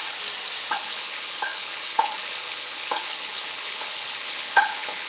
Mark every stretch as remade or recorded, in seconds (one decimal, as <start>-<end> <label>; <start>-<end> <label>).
0.0-0.7 recorded; 0.7-5.1 remade